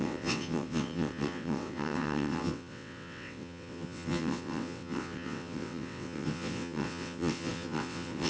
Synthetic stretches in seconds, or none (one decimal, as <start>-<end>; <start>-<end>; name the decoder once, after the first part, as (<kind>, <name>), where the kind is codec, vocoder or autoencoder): 0.0-8.3 (vocoder, WaveNeXt)

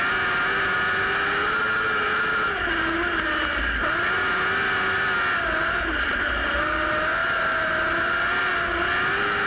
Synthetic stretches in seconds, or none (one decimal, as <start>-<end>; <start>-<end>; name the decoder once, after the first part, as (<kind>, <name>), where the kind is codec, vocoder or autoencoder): none

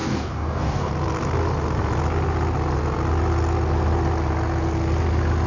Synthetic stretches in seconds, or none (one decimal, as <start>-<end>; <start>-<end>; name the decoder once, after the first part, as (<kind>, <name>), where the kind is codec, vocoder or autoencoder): 0.0-0.9 (codec, DAC)

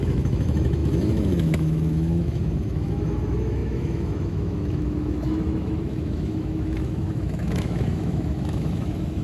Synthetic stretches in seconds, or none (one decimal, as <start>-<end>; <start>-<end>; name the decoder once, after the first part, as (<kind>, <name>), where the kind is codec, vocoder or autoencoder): 0.0-9.2 (autoencoder, DAC-VAE)

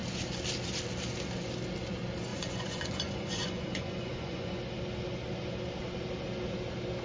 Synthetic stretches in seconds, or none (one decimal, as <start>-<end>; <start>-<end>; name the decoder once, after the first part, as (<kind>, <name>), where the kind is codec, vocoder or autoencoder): 2.3-4.6 (vocoder, Vocos)

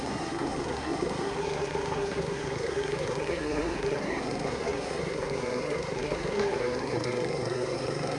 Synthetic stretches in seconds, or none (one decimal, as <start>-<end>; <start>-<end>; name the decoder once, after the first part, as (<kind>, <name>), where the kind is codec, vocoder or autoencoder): 0.0-8.2 (codec, SNAC)